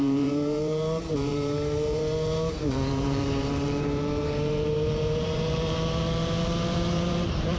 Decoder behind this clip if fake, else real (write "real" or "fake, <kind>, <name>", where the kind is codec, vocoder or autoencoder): fake, vocoder, BigVGAN v2